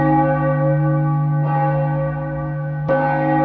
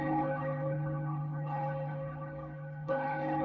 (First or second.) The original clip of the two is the first